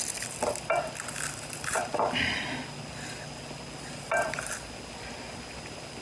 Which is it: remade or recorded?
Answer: recorded